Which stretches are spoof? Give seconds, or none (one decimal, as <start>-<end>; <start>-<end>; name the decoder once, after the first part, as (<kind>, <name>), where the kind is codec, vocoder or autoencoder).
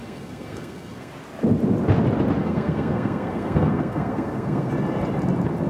0.0-1.1 (codec, SNAC); 2.4-4.7